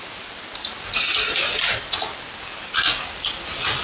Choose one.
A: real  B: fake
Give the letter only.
A